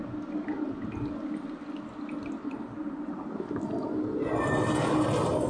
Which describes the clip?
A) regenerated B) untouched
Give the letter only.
B